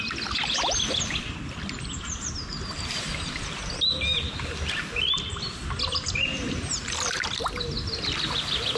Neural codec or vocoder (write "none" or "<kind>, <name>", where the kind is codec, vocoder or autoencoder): none